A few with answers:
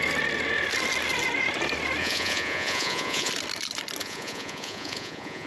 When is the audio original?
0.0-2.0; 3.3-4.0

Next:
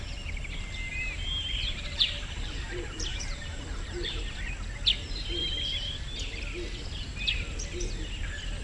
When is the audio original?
0.0-0.9; 4.2-8.6

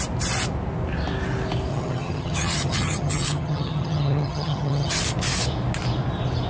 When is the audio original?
0.0-1.7; 5.0-6.5